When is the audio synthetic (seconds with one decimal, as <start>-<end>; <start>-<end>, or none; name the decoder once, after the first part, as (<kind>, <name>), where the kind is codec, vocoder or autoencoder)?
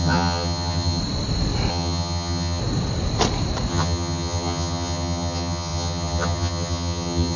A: 0.0-1.0 (vocoder, HiFi-GAN); 1.7-2.6; 3.7-7.4